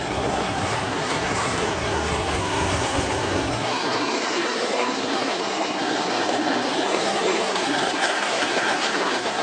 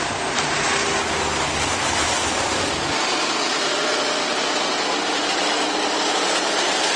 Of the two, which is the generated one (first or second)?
first